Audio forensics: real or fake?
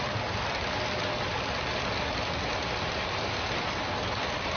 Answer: real